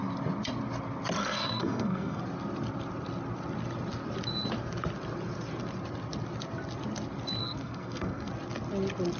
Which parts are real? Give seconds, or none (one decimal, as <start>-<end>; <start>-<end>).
0.0-1.2; 2.2-7.4; 8.3-9.2